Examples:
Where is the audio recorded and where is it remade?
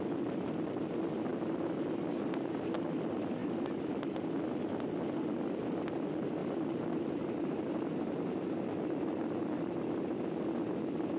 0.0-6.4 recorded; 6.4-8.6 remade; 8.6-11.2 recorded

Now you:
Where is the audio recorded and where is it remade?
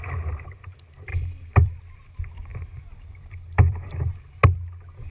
0.0-1.1 recorded; 1.1-1.7 remade; 1.7-2.5 recorded; 2.5-4.3 remade; 4.3-5.1 recorded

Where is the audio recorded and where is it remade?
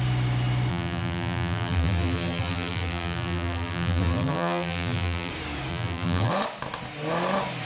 0.0-0.7 recorded; 0.7-5.3 remade; 5.3-5.7 recorded; 5.7-6.3 remade; 6.3-7.7 recorded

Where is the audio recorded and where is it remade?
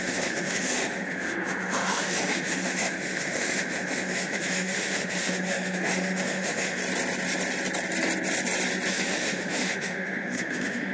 0.0-6.8 remade; 6.8-8.9 recorded; 8.9-10.9 remade